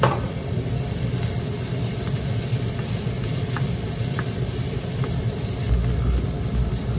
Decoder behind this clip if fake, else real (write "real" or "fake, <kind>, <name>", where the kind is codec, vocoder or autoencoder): fake, vocoder, BigVGAN v2